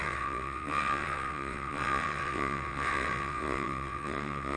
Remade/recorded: remade